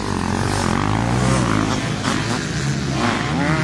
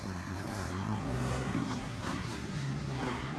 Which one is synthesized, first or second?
second